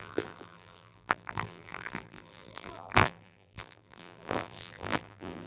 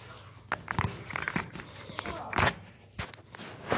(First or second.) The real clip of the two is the second